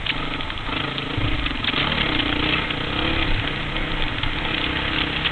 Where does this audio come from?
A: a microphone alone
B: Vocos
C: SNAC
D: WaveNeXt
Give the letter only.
A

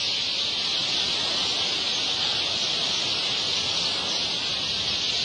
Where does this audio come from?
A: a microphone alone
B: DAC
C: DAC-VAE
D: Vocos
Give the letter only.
A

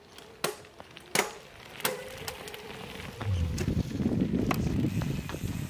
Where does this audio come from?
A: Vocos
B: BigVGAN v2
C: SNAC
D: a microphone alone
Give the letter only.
D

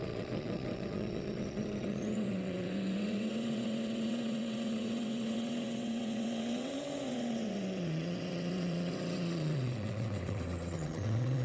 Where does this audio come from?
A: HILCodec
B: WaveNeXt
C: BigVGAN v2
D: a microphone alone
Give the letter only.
B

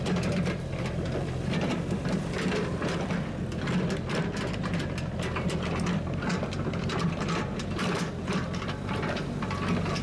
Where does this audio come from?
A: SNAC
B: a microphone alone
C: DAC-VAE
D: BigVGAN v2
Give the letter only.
D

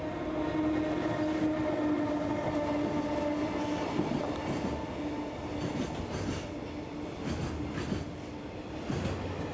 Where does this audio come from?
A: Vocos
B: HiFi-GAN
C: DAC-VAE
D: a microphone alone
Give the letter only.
D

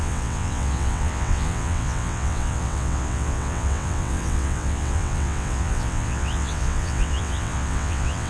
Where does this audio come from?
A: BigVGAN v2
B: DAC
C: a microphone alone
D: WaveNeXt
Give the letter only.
D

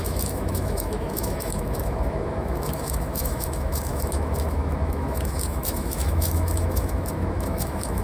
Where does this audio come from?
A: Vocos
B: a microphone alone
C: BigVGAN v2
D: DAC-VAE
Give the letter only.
D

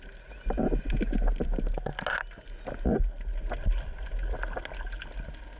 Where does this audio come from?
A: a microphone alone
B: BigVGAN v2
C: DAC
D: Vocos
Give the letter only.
A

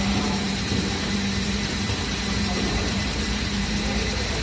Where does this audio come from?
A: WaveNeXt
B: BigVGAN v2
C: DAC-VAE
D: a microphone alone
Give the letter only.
B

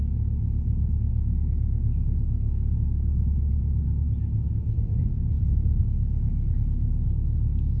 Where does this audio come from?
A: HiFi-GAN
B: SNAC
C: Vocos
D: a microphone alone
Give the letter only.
D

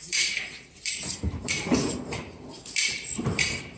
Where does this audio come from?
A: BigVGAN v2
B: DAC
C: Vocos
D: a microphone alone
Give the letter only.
A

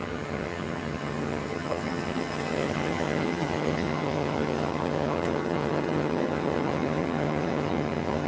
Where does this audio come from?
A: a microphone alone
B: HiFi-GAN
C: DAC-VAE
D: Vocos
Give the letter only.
B